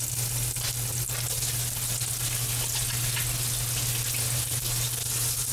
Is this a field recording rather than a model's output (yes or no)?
yes